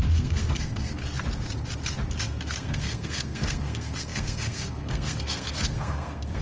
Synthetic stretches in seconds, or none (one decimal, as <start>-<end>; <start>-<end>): 0.0-1.0; 2.2-6.4